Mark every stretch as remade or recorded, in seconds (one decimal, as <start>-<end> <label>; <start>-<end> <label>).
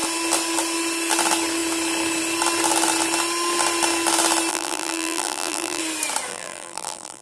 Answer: 0.0-4.5 recorded; 4.5-5.8 remade; 5.8-6.3 recorded; 6.3-7.2 remade